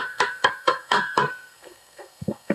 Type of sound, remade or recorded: remade